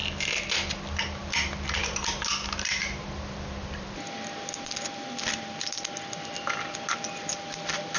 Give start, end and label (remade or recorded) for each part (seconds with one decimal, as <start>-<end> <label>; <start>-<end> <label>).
0.0-8.0 recorded